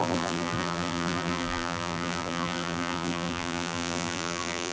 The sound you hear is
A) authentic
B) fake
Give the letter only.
B